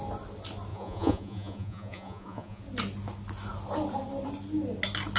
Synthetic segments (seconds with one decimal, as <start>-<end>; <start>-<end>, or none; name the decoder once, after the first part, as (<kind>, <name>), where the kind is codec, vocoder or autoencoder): 0.7-2.6 (vocoder, Vocos)